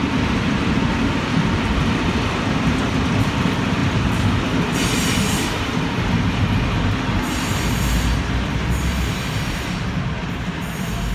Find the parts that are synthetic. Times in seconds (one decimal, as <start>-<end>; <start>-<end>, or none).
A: none